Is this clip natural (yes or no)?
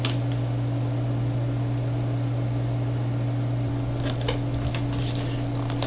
yes